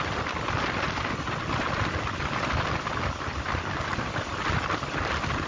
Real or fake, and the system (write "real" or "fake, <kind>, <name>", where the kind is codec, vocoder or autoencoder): fake, vocoder, BigVGAN v2